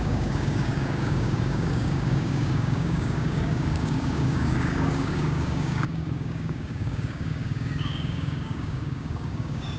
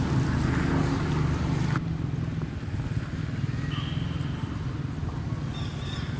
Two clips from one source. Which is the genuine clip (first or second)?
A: second